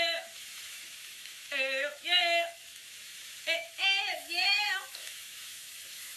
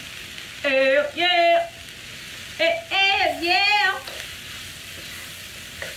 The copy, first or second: first